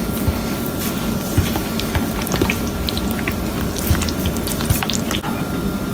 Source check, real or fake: real